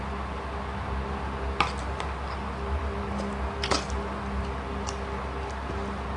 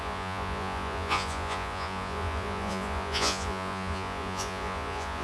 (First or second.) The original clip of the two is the first